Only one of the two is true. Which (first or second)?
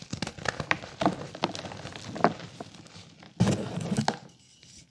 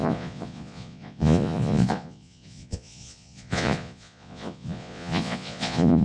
first